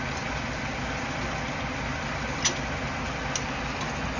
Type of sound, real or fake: real